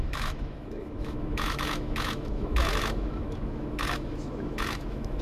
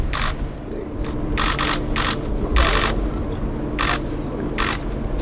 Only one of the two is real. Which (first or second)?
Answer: second